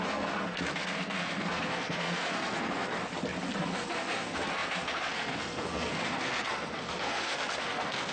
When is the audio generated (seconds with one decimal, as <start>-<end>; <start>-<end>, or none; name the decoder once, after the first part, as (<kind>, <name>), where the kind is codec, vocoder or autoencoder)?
0.0-2.9 (codec, SNAC); 3.6-8.1